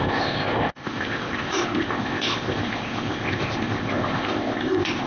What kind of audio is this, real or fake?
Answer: fake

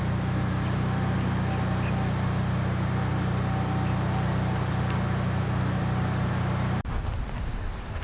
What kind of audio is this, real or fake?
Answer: real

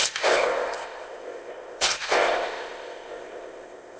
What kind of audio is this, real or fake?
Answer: fake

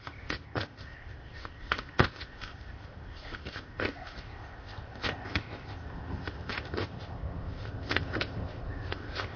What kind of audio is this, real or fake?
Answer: fake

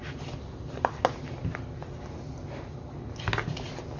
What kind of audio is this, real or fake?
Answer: real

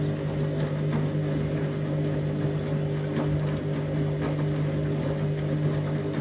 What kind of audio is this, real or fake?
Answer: real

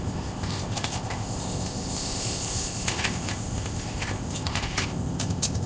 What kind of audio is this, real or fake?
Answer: fake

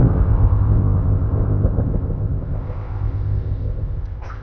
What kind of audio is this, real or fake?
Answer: fake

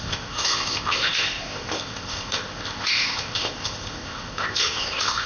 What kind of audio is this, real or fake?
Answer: fake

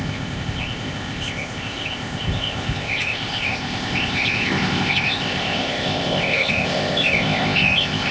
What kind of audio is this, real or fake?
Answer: fake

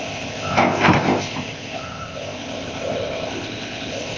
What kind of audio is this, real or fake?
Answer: fake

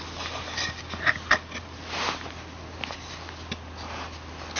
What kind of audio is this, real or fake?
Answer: real